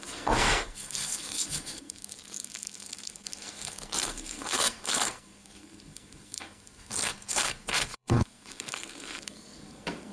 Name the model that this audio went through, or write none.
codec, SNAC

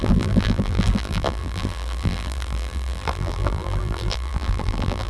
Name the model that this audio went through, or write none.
vocoder, BigVGAN v2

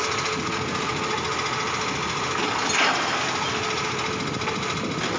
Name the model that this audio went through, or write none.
none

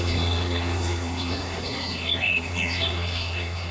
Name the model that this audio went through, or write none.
codec, SNAC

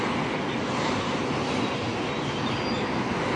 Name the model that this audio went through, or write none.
none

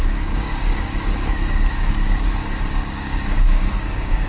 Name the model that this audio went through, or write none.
codec, DAC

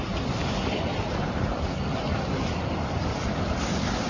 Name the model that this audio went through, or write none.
none